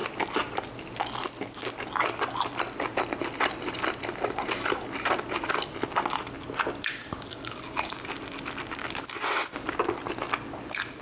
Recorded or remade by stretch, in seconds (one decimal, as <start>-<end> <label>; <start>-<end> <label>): 0.0-11.0 recorded

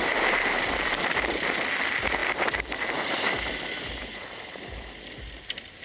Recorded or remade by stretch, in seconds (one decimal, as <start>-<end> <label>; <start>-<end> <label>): 0.0-5.8 recorded

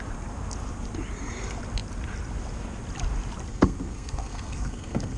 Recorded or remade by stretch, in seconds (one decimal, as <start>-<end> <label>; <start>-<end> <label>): 0.0-3.5 recorded; 3.5-5.2 remade

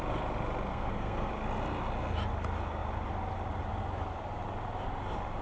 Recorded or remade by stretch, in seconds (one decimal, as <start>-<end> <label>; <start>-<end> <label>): 0.0-0.7 recorded; 0.7-1.3 remade; 1.3-5.4 recorded

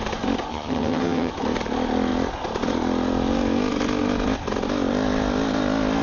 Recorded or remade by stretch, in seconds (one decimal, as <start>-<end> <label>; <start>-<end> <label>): 0.0-0.5 recorded; 0.5-1.3 remade; 1.3-6.0 recorded

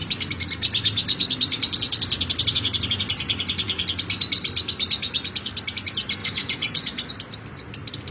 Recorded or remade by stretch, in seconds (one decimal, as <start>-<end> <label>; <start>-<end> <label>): 0.0-6.2 recorded; 6.2-7.1 remade; 7.1-8.1 recorded

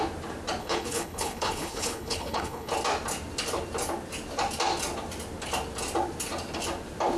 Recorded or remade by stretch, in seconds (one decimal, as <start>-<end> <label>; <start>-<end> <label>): 0.0-0.6 recorded; 0.6-2.7 remade; 2.7-7.2 recorded